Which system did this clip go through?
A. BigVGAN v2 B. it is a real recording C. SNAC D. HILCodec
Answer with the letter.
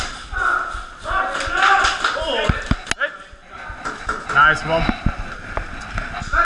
B